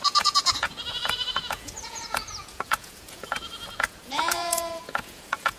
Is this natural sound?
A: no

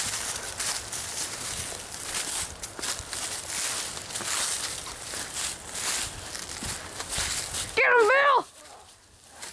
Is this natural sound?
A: yes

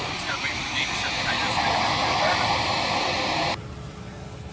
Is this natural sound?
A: yes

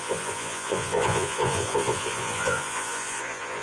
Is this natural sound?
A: no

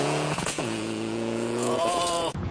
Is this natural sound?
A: no